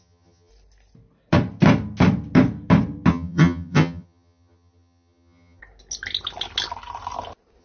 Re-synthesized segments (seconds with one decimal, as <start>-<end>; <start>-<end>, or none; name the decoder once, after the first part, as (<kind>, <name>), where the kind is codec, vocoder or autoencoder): 0.0-0.5 (vocoder, HiFi-GAN); 3.1-5.6

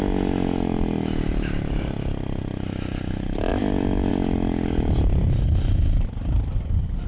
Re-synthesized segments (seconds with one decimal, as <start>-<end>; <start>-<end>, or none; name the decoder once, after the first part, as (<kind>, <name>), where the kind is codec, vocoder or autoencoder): none

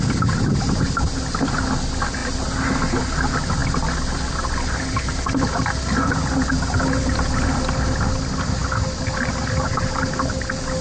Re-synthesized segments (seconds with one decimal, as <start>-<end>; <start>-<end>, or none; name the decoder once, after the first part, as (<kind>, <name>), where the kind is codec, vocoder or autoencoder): none

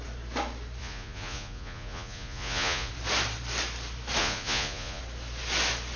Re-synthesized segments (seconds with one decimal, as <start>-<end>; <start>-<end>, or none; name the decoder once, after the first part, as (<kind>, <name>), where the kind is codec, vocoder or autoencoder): 0.8-2.9 (vocoder, Vocos); 4.2-5.0

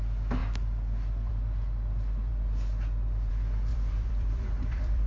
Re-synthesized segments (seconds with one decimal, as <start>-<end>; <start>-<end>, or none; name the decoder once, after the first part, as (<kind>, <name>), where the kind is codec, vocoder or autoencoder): 3.7-5.1 (vocoder, BigVGAN v2)

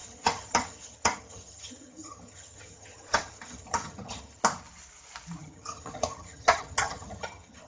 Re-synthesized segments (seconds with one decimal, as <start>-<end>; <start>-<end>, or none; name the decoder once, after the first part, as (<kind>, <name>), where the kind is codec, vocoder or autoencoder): 0.0-4.4 (vocoder, HiFi-GAN); 5.4-7.7